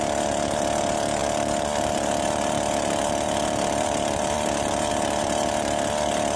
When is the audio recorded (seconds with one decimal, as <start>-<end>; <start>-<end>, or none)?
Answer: 0.0-1.2; 4.9-6.4